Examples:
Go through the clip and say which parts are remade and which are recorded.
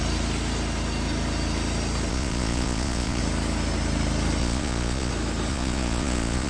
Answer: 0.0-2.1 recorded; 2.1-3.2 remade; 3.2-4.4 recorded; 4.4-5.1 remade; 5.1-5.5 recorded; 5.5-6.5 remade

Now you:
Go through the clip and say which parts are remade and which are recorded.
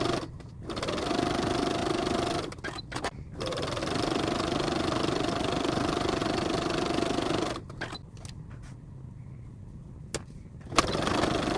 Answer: 0.0-11.6 recorded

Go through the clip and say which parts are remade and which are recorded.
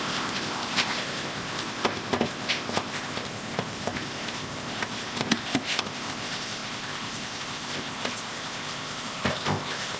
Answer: 0.0-10.0 remade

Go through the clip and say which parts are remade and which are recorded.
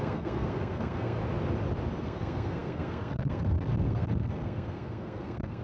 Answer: 0.0-1.2 remade; 1.2-2.0 recorded; 2.0-5.6 remade